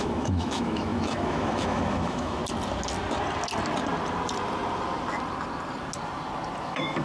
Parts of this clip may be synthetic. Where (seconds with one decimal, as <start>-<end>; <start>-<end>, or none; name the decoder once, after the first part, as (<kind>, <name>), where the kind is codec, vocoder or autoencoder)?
0.0-2.4 (autoencoder, DAC-VAE); 6.6-7.0